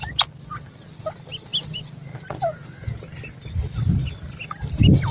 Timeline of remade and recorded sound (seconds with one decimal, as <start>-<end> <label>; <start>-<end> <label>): 0.0-5.1 recorded